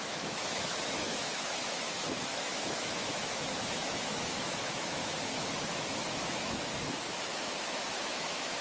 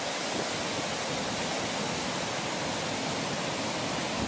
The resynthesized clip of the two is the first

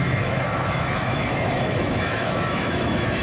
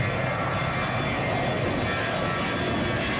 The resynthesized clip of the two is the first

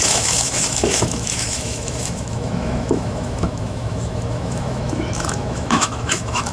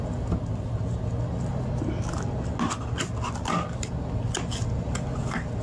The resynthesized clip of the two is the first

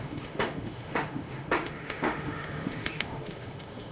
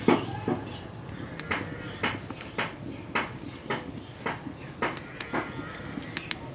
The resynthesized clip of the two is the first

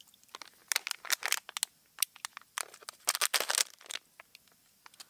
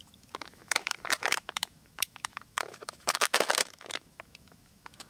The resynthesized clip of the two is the second